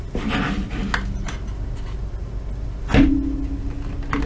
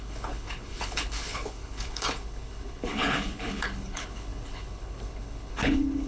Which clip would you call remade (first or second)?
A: second